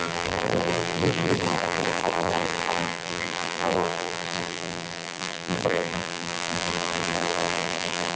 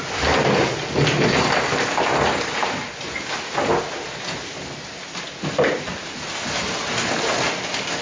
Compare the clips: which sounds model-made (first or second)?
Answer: first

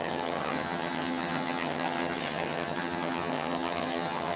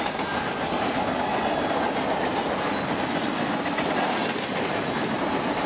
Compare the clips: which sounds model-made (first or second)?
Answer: first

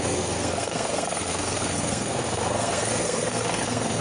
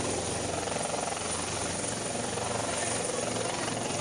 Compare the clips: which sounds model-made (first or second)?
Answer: first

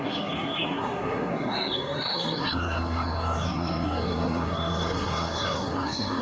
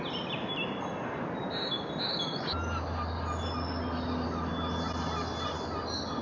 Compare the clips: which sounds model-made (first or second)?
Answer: first